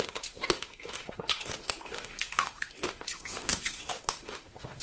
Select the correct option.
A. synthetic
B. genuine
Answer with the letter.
A